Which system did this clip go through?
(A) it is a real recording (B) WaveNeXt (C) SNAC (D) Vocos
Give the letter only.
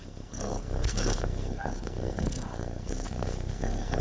C